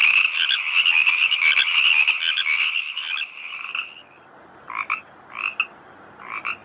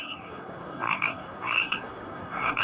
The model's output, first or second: second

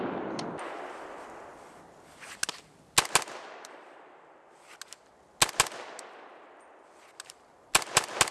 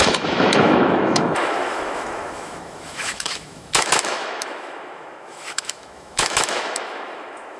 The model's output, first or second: second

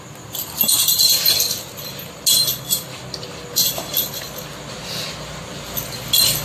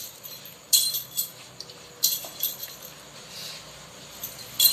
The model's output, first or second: second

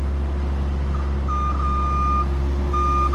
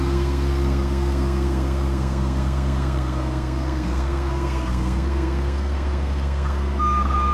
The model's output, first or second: second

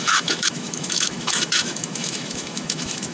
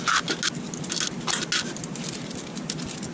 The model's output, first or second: first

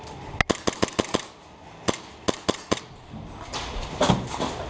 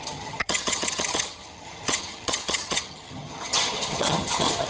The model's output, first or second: second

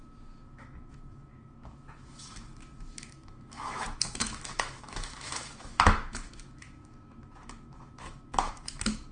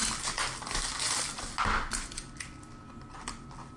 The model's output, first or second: first